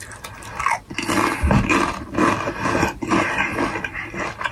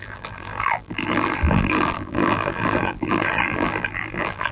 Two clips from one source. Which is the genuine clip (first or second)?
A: first